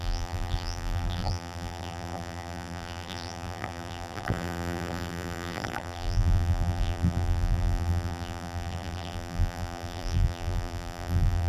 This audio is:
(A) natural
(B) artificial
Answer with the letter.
B